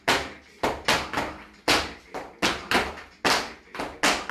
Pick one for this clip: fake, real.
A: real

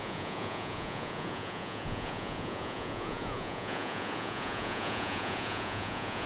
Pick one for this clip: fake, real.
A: fake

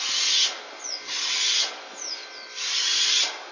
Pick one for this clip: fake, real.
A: real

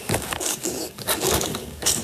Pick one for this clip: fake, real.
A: fake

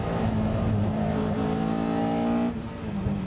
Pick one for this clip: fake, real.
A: real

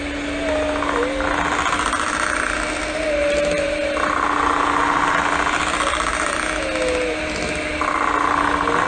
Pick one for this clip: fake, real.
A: real